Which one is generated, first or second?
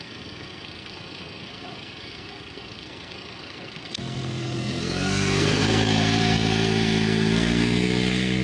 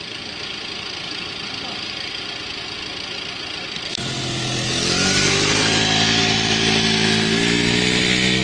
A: first